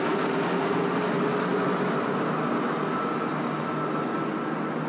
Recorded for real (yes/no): yes